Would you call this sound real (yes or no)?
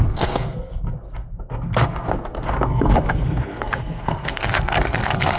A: no